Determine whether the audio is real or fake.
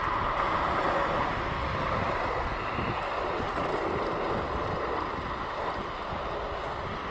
real